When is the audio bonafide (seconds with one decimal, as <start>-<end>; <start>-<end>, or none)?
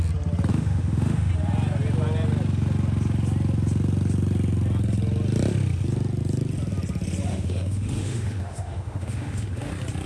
0.0-0.5; 1.3-7.3; 9.7-10.1